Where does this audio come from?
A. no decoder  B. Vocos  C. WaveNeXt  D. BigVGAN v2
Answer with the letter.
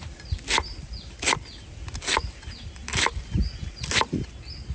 A